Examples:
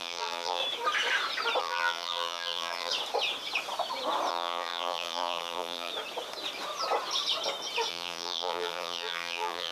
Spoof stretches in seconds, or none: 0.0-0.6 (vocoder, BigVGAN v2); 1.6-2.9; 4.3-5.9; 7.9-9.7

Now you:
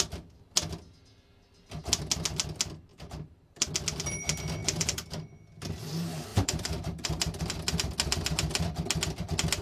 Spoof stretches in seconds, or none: 2.9-3.7 (vocoder, BigVGAN v2); 4.6-5.1; 6.3-7.4

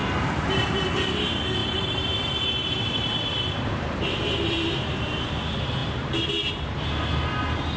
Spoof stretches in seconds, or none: 0.0-0.9 (vocoder, BigVGAN v2); 1.6-5.3; 5.8-6.9

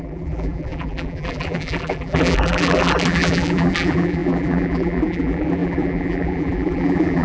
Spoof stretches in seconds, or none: 0.0-7.2 (vocoder, BigVGAN v2)

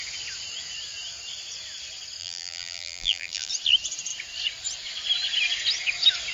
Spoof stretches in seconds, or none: 2.2-3.5 (vocoder, BigVGAN v2)

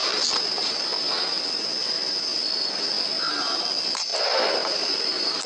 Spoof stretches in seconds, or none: 0.0-0.9 (vocoder, BigVGAN v2); 3.6-4.1; 4.8-5.5